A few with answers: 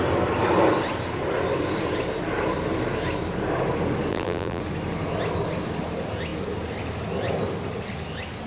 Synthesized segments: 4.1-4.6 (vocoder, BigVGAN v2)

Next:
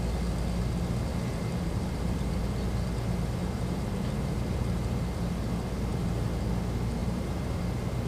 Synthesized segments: 1.1-2.4 (vocoder, BigVGAN v2); 3.4-5.2; 5.9-6.5; 7.0-7.6

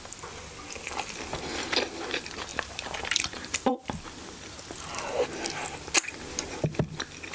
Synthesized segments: 2.5-3.8 (vocoder, BigVGAN v2)

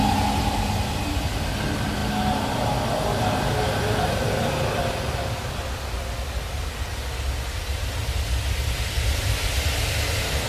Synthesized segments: none

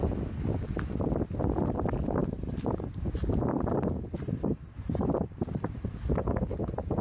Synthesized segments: 2.2-6.4 (vocoder, BigVGAN v2)

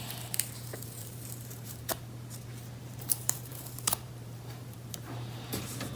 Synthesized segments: 0.0-1.9 (vocoder, BigVGAN v2); 2.8-6.0